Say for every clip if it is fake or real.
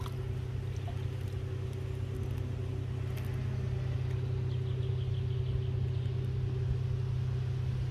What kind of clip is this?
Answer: real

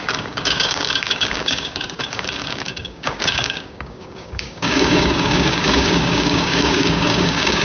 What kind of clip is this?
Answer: fake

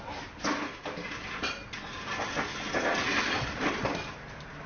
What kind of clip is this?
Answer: real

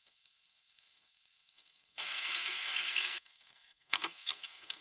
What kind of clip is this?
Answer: fake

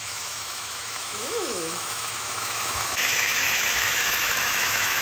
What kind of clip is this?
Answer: fake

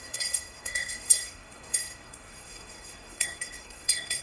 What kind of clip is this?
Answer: fake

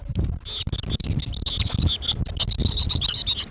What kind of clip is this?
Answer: real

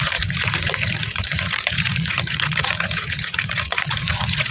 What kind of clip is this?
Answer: fake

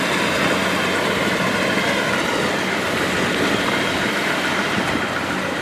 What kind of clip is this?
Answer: real